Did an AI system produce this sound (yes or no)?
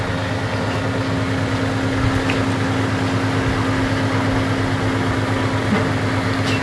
no